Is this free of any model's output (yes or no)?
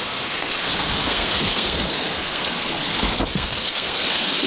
no